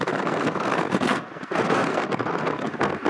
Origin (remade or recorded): remade